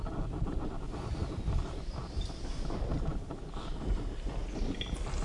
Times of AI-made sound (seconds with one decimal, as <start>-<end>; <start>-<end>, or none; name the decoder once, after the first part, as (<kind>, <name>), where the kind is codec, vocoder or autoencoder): none